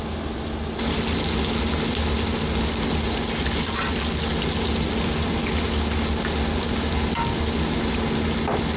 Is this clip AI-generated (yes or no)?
no